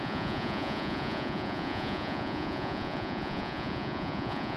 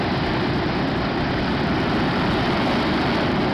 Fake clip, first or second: first